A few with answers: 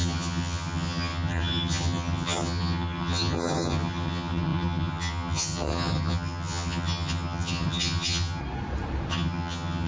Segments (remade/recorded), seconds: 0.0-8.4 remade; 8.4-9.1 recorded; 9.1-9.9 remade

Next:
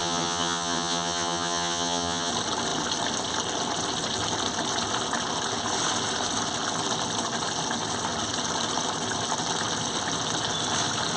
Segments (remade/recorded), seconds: 0.0-2.3 remade; 2.3-11.2 recorded

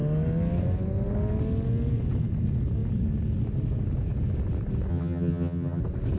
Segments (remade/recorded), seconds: 0.0-4.9 recorded; 4.9-5.8 remade; 5.8-6.2 recorded

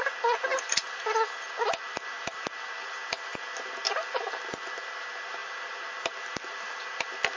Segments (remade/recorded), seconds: 0.0-7.4 recorded

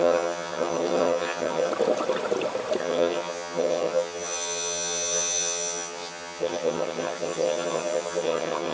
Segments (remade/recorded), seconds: 0.0-1.7 remade; 1.7-2.8 recorded; 2.8-8.7 remade

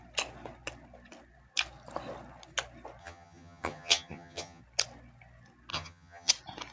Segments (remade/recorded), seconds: 0.0-3.0 recorded; 3.0-4.6 remade; 4.6-5.7 recorded; 5.7-6.3 remade; 6.3-6.7 recorded

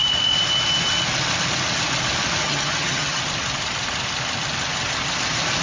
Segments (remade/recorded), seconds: 0.0-2.4 recorded; 2.4-3.2 remade; 3.2-5.6 recorded

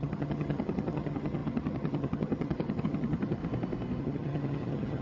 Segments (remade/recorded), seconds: 0.0-3.4 remade; 3.4-4.0 recorded; 4.0-5.0 remade